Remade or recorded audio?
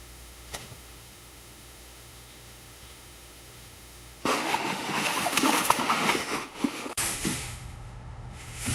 remade